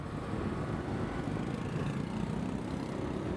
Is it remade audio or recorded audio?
recorded